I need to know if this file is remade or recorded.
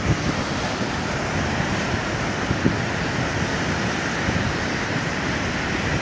recorded